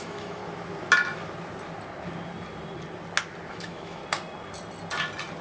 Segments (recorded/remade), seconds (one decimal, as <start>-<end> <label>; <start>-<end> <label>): 0.0-0.4 remade; 0.4-3.5 recorded; 3.5-4.0 remade; 4.0-5.4 recorded